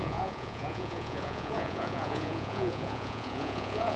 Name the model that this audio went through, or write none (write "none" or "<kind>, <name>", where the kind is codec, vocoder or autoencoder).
vocoder, Vocos